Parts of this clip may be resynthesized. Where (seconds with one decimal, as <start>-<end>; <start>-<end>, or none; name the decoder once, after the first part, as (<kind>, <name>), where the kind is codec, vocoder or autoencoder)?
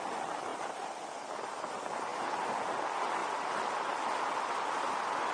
0.5-1.5 (vocoder, BigVGAN v2); 3.2-4.4